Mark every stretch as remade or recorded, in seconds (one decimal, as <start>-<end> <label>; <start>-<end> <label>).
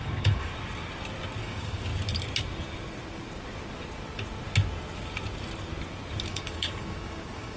0.0-0.5 remade; 0.5-1.4 recorded; 1.4-1.9 remade; 1.9-6.3 recorded; 6.3-7.6 remade